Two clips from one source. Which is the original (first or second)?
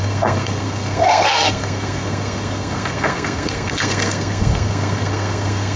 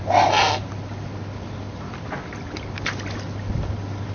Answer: second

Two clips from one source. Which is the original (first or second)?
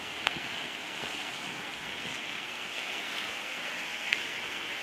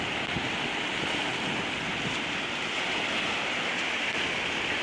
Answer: second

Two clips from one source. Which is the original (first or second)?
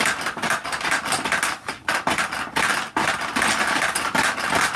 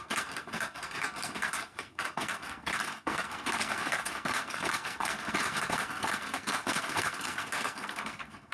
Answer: first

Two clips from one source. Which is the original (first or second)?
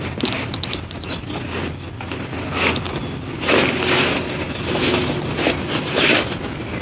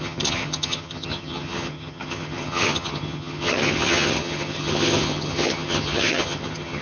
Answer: first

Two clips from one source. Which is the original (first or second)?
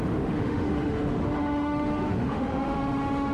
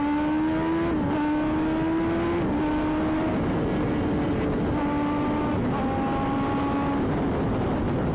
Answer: second